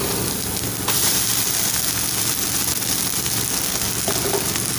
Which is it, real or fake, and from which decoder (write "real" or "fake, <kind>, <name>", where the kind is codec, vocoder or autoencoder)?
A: real